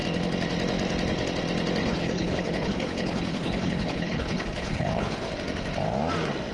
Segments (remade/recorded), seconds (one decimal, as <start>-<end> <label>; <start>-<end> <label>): 0.0-1.8 recorded; 1.8-5.3 remade; 5.3-6.5 recorded